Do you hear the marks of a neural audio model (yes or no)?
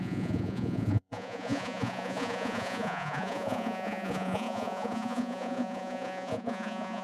yes